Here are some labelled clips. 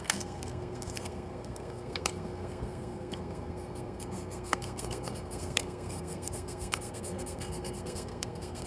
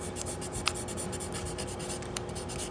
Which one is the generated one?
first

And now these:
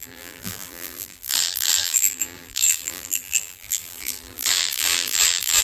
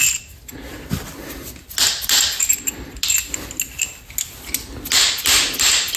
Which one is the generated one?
first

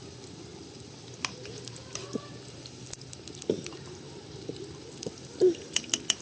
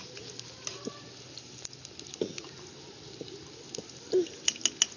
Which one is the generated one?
first